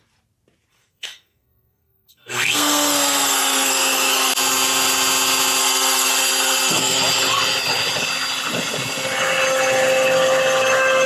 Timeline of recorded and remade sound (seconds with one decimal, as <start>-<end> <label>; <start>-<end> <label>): 0.0-0.7 recorded; 0.7-4.3 remade; 4.3-5.6 recorded; 5.6-7.0 remade; 7.0-11.1 recorded